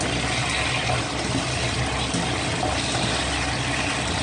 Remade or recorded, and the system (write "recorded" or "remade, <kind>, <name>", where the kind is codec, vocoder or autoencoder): recorded